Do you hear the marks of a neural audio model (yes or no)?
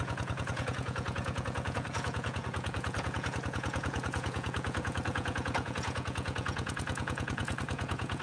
yes